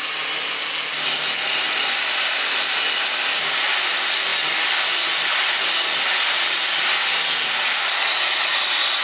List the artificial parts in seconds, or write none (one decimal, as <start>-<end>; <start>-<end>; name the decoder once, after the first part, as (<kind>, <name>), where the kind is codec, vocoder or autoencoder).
none